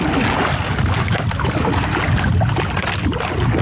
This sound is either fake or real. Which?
real